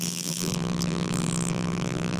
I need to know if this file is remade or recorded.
remade